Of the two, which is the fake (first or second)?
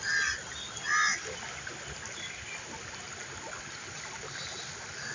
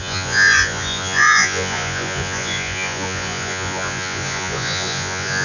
second